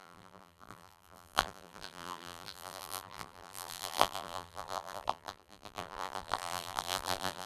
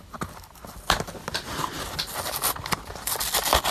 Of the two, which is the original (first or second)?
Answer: second